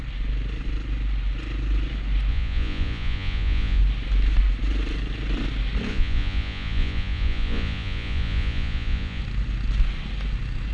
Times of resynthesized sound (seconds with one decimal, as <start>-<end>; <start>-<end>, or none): 2.3-3.8; 5.9-9.2